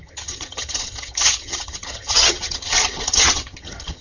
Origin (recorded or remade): remade